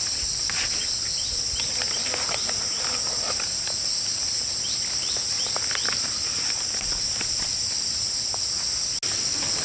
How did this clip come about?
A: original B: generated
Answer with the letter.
A